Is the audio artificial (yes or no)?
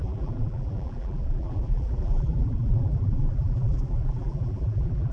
yes